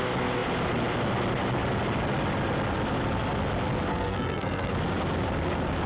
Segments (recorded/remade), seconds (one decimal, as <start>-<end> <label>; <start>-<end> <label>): 0.0-3.9 recorded; 3.9-4.7 remade; 4.7-5.9 recorded